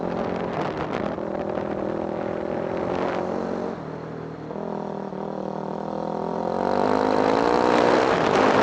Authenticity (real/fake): real